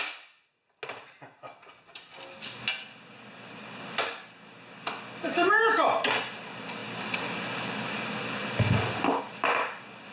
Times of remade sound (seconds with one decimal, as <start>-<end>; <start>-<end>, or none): none